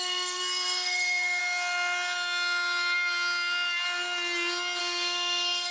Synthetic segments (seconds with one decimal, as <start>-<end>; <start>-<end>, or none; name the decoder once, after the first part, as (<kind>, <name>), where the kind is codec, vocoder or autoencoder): 0.0-1.4 (codec, SNAC); 4.8-5.7